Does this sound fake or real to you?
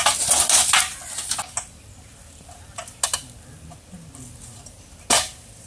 real